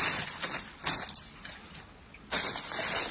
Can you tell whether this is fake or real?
real